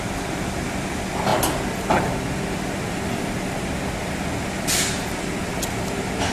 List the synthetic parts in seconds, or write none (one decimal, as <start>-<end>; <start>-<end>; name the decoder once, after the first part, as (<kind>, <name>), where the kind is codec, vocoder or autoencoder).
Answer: none